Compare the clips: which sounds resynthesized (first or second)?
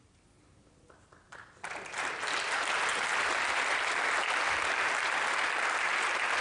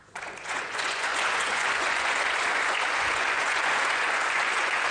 second